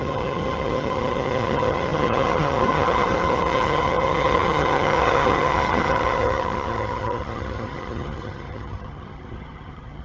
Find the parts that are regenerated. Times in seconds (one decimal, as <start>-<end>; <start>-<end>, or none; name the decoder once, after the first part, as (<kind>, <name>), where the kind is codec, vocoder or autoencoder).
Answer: 0.0-10.0 (vocoder, HiFi-GAN)